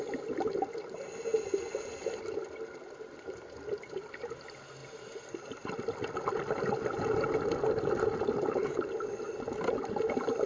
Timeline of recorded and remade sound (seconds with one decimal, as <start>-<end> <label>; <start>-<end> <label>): 0.0-10.5 recorded